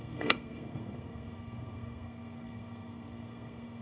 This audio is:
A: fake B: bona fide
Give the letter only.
A